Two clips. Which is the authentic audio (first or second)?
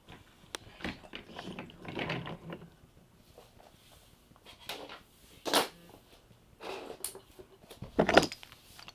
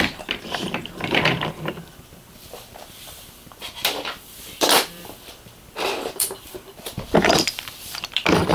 first